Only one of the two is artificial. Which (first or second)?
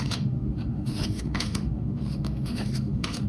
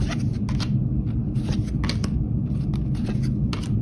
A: first